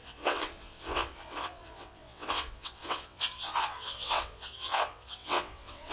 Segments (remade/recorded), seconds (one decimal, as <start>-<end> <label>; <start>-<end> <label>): 0.0-5.9 remade